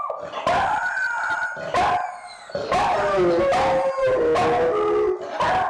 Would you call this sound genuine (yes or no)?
yes